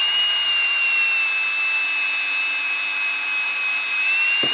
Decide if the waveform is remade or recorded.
recorded